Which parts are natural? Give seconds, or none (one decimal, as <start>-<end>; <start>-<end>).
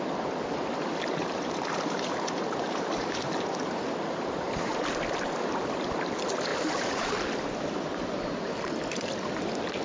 0.0-1.2; 4.7-6.5; 7.1-9.8